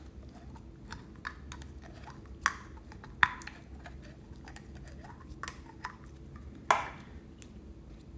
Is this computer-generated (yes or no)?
no